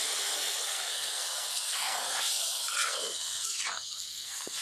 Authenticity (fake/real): fake